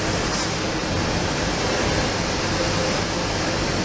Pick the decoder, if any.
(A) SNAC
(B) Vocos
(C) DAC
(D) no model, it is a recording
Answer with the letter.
D